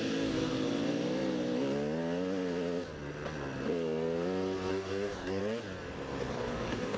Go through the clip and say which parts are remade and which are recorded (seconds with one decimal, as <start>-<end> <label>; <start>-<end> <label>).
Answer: 0.0-0.6 remade; 0.6-4.7 recorded; 4.7-5.4 remade; 5.4-6.3 recorded; 6.3-7.0 remade